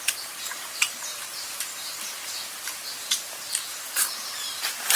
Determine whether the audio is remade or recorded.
remade